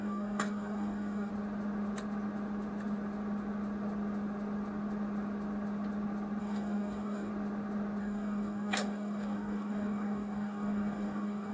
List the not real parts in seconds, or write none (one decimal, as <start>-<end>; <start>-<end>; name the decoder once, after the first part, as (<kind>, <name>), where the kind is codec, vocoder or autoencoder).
0.0-1.3 (codec, DAC); 6.4-7.3; 8.0-11.5